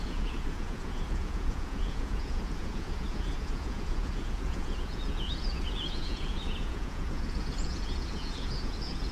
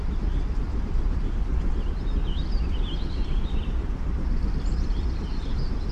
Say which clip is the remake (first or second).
first